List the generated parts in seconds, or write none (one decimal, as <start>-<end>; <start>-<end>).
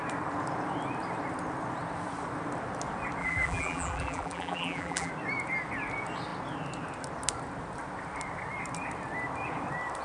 3.2-5.1